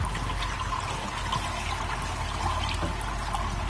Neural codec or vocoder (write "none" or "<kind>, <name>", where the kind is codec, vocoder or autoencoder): none